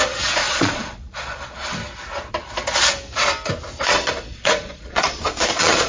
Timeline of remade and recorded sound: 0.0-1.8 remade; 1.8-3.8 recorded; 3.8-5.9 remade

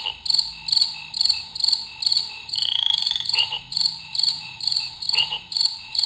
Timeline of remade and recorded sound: 0.0-2.1 recorded; 2.1-6.1 remade

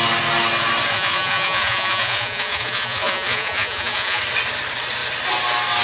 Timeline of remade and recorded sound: 0.0-0.9 recorded; 0.9-4.2 remade; 4.2-5.8 recorded

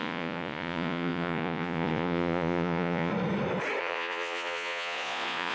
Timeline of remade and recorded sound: 0.0-3.1 remade; 3.1-3.8 recorded; 3.8-5.5 remade

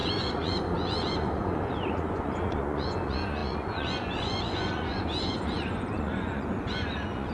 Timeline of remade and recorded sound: 0.0-7.3 remade

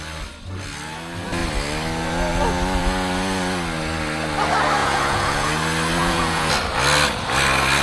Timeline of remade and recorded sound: 0.0-4.8 recorded; 4.8-5.5 remade; 5.5-6.0 recorded; 6.0-6.5 remade; 6.5-7.8 recorded

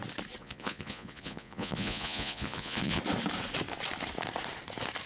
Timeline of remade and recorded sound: 0.0-0.4 recorded; 0.4-3.0 remade; 3.0-5.1 recorded